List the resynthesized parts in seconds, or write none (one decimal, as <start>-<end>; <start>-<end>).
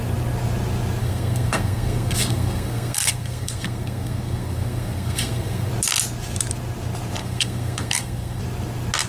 1.0-5.7; 7.2-8.4